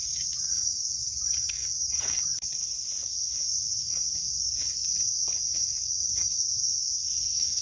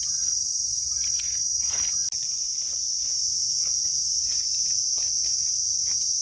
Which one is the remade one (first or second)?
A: first